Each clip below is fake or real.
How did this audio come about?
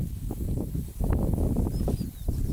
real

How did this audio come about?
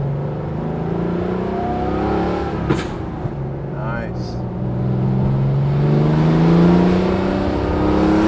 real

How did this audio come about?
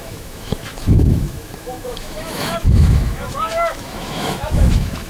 fake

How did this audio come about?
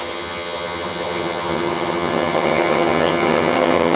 fake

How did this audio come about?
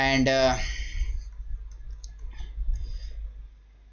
real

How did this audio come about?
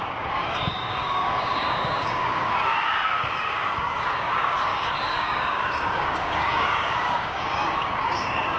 fake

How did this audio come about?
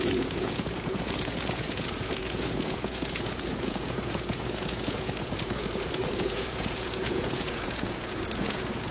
fake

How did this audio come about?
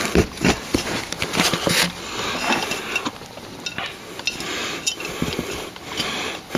real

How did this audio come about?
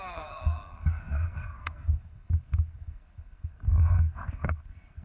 fake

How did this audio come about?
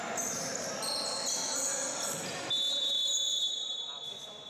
real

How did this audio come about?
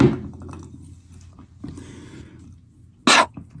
real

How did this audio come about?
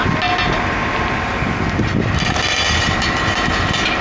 real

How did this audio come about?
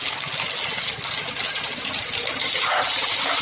real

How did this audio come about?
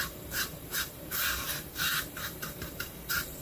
fake